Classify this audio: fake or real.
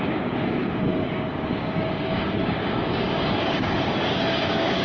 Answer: fake